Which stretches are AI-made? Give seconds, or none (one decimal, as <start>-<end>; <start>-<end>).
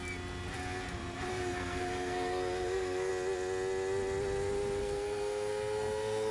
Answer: 1.3-3.1; 4.8-6.3